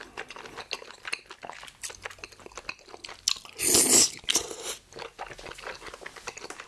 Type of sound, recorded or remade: recorded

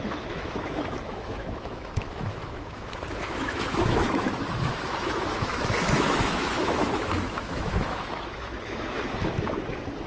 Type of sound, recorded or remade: remade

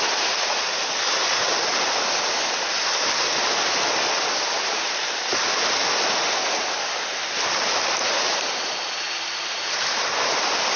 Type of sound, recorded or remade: recorded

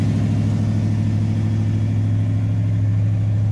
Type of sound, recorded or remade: recorded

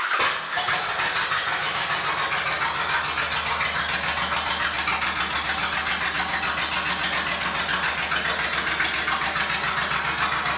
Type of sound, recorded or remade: recorded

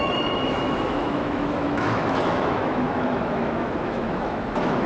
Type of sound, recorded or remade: remade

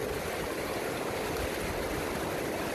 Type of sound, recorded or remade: recorded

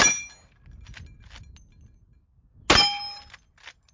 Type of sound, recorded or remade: recorded